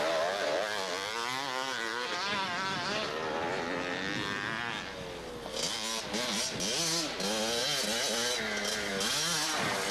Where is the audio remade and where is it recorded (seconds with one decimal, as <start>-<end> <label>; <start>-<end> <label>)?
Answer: 0.0-9.9 recorded